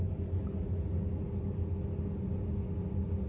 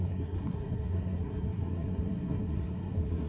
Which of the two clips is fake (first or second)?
second